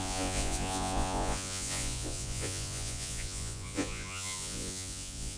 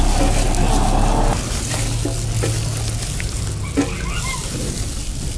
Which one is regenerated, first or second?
first